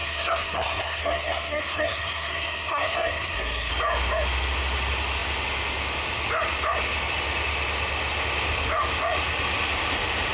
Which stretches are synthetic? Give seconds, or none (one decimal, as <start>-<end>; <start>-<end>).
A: 0.0-3.7

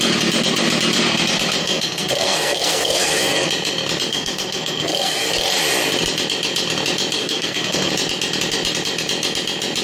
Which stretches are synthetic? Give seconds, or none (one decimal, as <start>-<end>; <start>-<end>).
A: 1.6-3.5; 4.1-5.3; 7.2-7.9

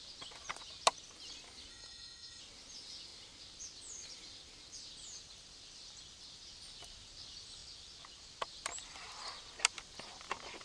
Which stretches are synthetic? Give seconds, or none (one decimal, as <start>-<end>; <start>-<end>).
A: 1.7-2.4

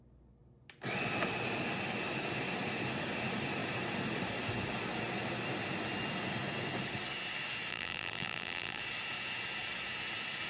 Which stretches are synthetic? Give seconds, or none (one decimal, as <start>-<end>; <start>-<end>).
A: 7.7-8.8

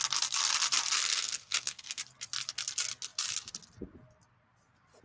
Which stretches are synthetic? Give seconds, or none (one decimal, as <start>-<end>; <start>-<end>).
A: 1.1-2.0

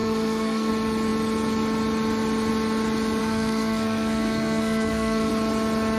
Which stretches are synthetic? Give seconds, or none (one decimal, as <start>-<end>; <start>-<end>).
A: 0.0-0.7; 3.2-5.3

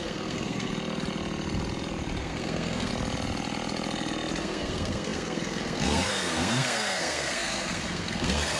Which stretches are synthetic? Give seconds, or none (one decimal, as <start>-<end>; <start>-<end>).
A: 0.0-0.7; 2.2-2.9; 4.4-8.6